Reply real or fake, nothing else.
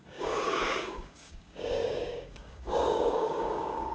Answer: fake